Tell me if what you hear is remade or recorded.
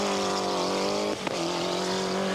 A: recorded